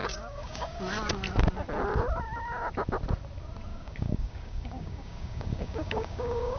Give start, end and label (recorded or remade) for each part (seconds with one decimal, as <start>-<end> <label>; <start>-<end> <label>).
0.0-0.8 remade; 0.8-3.7 recorded; 3.7-6.6 remade

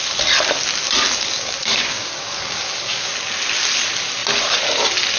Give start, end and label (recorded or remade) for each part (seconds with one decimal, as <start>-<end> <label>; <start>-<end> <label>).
0.0-1.3 recorded; 1.3-3.1 remade; 3.1-5.2 recorded

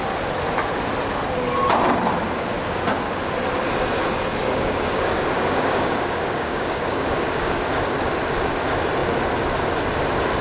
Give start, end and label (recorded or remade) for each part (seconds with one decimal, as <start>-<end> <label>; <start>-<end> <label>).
0.0-4.4 recorded; 4.4-7.6 remade; 7.6-10.4 recorded